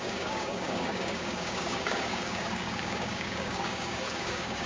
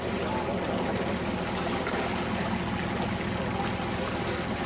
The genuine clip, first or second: second